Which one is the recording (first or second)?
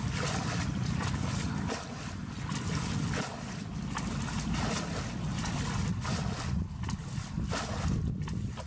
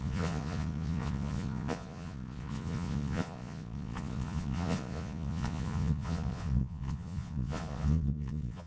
first